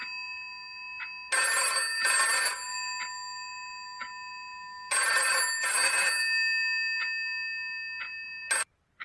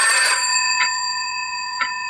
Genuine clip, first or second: first